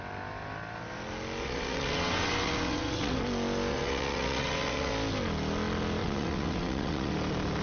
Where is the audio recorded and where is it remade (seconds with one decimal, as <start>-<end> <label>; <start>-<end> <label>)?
0.0-1.4 recorded; 1.4-3.2 remade; 3.2-3.7 recorded; 3.7-4.9 remade; 4.9-6.0 recorded; 6.0-7.1 remade; 7.1-7.6 recorded